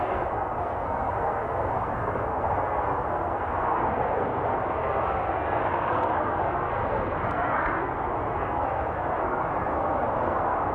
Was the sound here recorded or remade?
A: remade